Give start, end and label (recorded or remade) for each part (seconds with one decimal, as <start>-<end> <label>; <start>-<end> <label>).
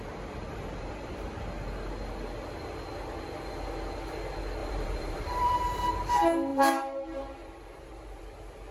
0.0-0.5 recorded; 0.5-1.1 remade; 1.1-4.6 recorded; 4.6-5.6 remade; 5.6-6.5 recorded; 6.5-8.2 remade; 8.2-8.7 recorded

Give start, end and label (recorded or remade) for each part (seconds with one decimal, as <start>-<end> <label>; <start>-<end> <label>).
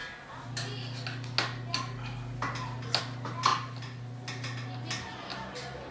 0.0-5.9 recorded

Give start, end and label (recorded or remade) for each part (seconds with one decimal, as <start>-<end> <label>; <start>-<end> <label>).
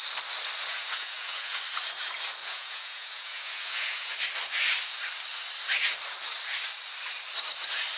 0.0-0.7 recorded; 0.7-1.6 remade; 1.6-2.4 recorded; 2.4-4.2 remade; 4.2-8.0 recorded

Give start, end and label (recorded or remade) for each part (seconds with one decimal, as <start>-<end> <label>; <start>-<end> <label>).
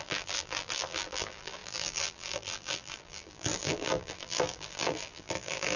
0.0-5.8 remade